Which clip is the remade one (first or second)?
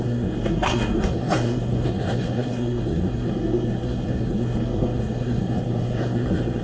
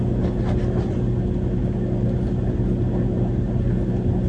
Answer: first